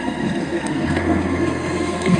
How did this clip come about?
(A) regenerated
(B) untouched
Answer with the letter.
A